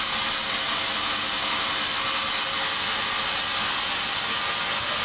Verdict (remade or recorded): recorded